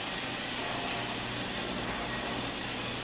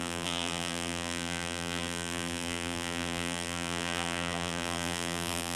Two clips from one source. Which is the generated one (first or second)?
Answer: second